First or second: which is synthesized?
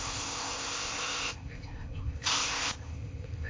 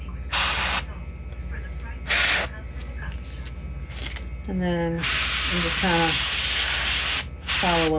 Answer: first